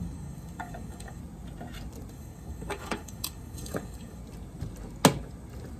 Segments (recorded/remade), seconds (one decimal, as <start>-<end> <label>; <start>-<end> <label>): 0.0-1.2 remade; 1.2-2.1 recorded; 2.1-4.2 remade; 4.2-5.8 recorded